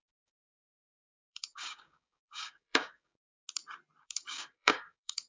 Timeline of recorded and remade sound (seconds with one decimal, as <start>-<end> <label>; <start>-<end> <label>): 0.0-3.3 remade; 3.3-4.0 recorded; 4.0-5.3 remade